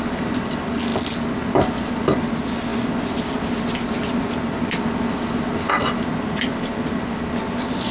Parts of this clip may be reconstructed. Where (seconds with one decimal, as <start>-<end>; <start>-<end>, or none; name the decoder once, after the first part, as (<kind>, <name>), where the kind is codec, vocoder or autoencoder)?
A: none